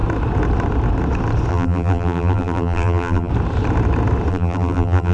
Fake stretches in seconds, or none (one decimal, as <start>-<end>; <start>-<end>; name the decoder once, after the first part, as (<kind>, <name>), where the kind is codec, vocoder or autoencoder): 1.5-3.3 (vocoder, BigVGAN v2); 4.3-5.1